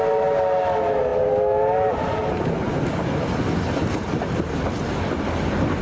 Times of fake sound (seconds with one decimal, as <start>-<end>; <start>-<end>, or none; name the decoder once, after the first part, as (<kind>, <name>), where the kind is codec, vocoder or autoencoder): none